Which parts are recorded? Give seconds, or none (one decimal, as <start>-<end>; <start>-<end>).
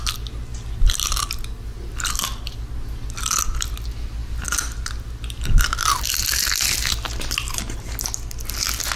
0.0-4.2; 4.8-9.0